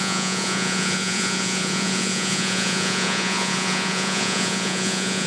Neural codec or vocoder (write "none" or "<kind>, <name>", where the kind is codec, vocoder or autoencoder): vocoder, Vocos